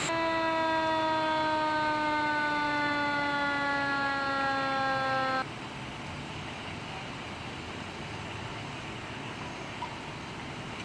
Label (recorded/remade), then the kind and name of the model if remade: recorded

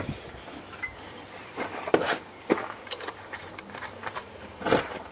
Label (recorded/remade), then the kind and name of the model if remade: remade, vocoder, BigVGAN v2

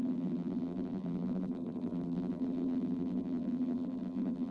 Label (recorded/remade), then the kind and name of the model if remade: remade, vocoder, BigVGAN v2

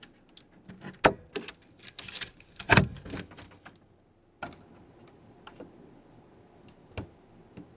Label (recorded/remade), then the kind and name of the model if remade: recorded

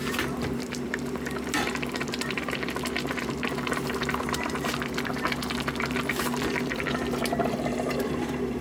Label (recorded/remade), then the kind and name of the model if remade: remade, vocoder, BigVGAN v2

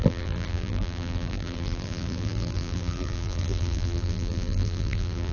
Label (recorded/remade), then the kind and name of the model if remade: remade, vocoder, BigVGAN v2